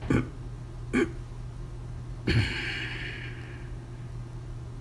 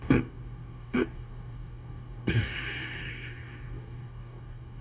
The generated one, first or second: second